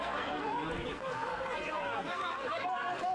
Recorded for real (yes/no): no